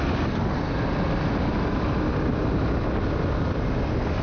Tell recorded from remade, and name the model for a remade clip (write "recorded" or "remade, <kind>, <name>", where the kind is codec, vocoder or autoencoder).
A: recorded